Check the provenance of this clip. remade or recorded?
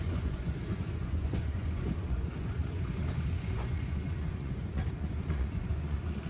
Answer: remade